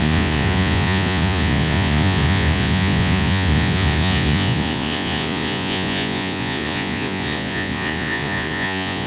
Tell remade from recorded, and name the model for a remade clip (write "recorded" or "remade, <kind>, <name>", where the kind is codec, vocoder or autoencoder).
remade, vocoder, Vocos